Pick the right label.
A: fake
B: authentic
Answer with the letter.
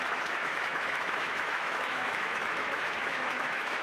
A